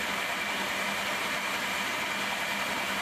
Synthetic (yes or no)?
yes